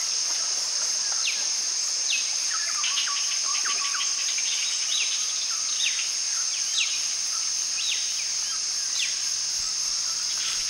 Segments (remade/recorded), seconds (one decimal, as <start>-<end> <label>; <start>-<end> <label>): 0.0-10.7 recorded